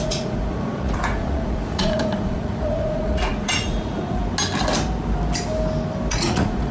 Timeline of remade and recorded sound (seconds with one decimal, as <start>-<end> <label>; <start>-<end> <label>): 0.0-4.2 remade; 4.2-6.1 recorded; 6.1-6.7 remade